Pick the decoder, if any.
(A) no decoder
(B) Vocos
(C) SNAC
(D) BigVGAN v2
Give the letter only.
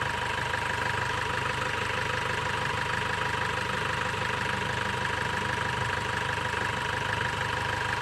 A